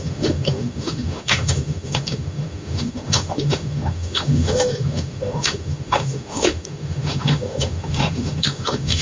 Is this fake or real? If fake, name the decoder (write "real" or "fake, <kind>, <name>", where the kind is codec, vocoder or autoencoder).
fake, autoencoder, DAC-VAE